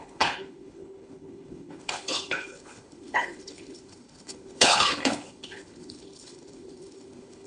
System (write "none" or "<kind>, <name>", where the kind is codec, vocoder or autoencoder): codec, HILCodec